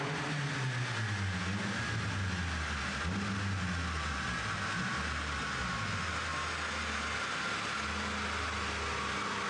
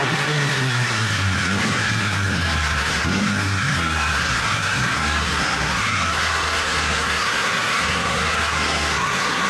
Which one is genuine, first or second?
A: first